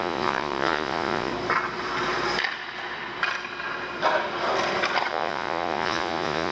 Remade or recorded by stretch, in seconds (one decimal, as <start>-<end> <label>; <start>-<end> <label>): 0.0-1.3 remade; 1.3-5.1 recorded; 5.1-6.5 remade